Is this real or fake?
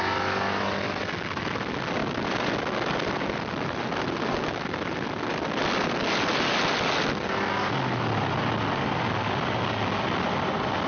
real